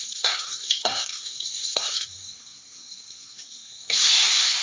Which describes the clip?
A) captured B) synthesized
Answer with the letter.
B